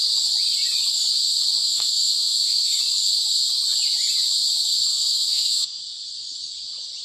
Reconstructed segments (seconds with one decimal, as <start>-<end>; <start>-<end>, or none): 1.6-2.7; 4.9-5.8